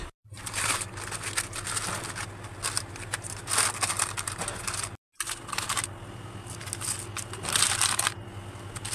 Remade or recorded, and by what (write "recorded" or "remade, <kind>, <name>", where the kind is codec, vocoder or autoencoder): recorded